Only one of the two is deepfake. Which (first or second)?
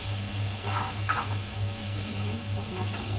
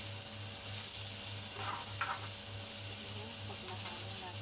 first